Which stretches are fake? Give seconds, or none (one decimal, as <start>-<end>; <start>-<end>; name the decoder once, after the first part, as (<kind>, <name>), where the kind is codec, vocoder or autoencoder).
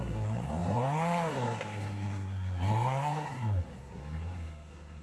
0.0-5.0 (codec, SNAC)